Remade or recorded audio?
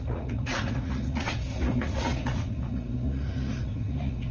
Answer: remade